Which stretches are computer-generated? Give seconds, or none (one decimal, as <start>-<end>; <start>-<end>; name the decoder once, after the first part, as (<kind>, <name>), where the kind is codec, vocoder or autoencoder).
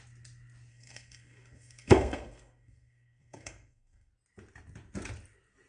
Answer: 0.7-4.1 (codec, SNAC)